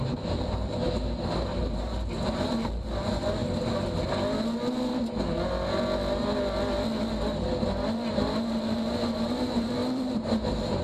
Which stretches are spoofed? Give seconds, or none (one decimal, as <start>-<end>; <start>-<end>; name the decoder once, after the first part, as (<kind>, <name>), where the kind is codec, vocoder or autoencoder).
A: 0.0-3.4 (vocoder, BigVGAN v2); 8.1-10.8